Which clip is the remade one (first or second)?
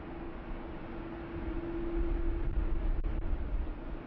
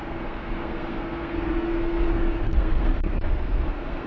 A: second